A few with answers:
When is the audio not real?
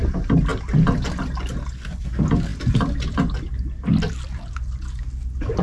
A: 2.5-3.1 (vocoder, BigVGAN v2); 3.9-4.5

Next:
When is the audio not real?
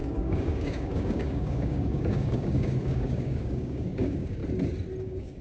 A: 0.0-4.4 (codec, DAC); 5.0-5.4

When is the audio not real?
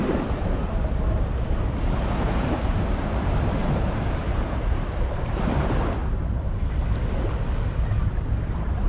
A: 0.0-0.6 (vocoder, BigVGAN v2); 1.5-6.0; 8.5-8.9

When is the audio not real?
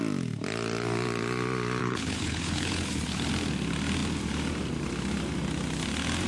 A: 1.8-3.3 (codec, HILCodec)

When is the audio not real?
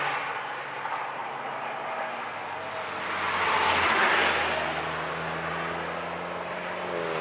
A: none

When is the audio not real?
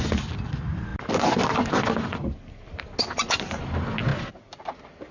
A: none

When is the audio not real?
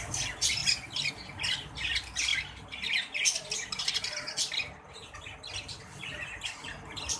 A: none